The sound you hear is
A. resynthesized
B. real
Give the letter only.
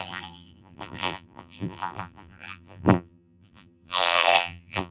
A